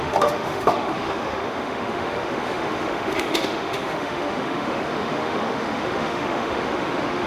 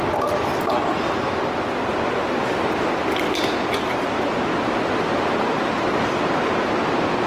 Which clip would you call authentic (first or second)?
second